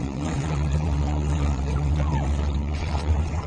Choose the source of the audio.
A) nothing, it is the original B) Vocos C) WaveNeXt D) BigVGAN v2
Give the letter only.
C